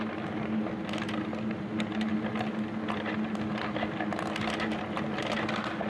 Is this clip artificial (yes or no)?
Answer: no